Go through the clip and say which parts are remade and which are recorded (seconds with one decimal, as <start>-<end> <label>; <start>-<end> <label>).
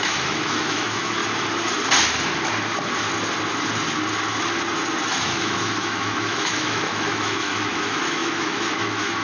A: 0.0-1.2 remade; 1.2-5.1 recorded; 5.1-9.2 remade